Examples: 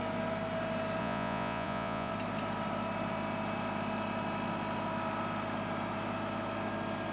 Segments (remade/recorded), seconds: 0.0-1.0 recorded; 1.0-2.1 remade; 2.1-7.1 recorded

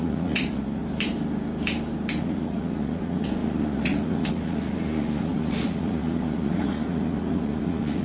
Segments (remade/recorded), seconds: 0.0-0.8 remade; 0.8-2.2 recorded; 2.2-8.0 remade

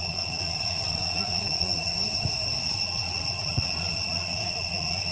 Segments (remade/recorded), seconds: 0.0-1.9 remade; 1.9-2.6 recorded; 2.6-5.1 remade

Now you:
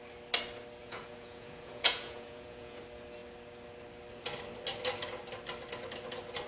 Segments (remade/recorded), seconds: 0.0-0.8 recorded; 0.8-2.8 remade; 2.8-6.5 recorded

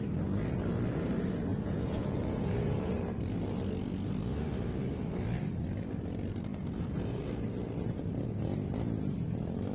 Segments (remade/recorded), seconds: 0.0-1.5 recorded; 1.5-2.9 remade; 2.9-6.5 recorded; 6.5-7.2 remade; 7.2-9.7 recorded

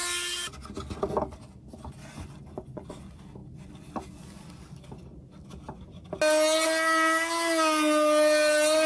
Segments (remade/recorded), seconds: 0.0-2.0 recorded; 2.0-2.9 remade; 2.9-8.9 recorded

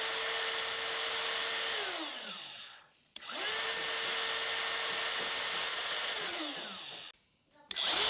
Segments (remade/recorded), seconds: 0.0-2.1 recorded; 2.1-3.4 remade; 3.4-5.7 recorded; 5.7-6.4 remade; 6.4-8.1 recorded